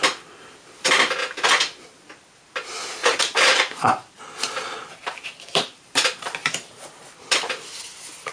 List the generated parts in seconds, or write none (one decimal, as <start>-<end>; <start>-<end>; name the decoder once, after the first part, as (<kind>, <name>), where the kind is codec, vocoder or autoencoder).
3.0-4.2 (vocoder, BigVGAN v2); 5.0-6.0; 6.4-7.0